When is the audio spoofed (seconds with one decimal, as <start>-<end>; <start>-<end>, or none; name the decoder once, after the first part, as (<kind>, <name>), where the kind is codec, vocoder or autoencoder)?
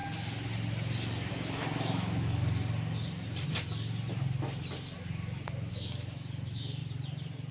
1.3-2.4 (autoencoder, DAC-VAE); 5.7-6.8